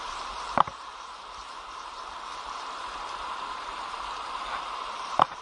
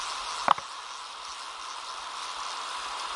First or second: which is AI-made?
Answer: first